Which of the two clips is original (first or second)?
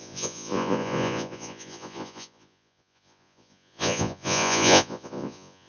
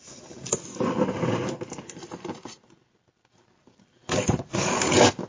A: second